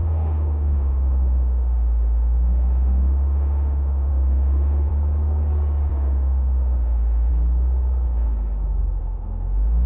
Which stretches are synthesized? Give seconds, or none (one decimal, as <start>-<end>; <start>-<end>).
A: 0.0-4.9; 5.9-7.3; 9.0-9.9